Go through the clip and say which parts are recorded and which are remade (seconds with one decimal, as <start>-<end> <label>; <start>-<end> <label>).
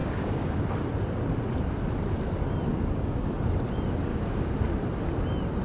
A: 0.0-0.6 remade; 0.6-2.7 recorded; 2.7-3.3 remade; 3.3-4.1 recorded; 4.1-4.6 remade; 4.6-5.6 recorded